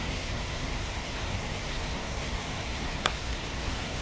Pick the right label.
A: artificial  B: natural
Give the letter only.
A